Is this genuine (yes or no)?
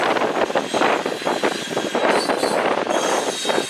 yes